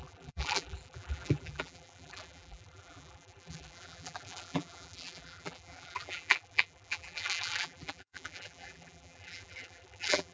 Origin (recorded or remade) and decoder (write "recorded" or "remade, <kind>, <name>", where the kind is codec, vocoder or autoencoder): remade, vocoder, BigVGAN v2